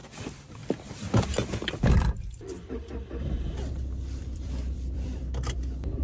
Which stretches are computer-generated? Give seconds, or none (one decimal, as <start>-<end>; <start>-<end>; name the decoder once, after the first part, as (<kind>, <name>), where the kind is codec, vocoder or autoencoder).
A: 0.0-3.3 (vocoder, BigVGAN v2); 4.2-5.6